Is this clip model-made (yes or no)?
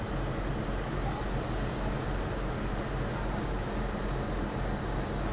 no